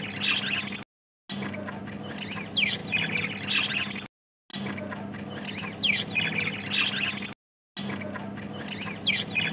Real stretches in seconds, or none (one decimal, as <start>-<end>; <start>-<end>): 0.0-9.5